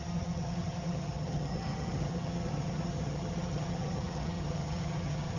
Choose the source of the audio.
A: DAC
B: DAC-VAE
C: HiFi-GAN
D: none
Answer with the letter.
C